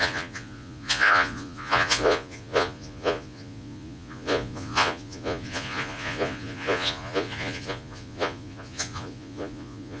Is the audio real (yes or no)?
no